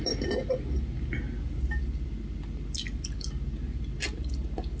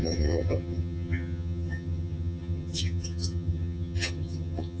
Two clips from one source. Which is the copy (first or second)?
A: second